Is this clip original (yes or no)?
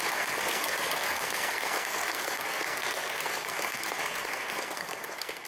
no